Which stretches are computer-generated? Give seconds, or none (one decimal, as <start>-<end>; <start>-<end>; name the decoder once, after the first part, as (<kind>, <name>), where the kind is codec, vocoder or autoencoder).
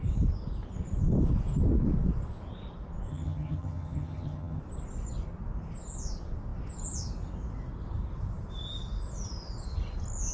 3.1-4.6 (vocoder, HiFi-GAN)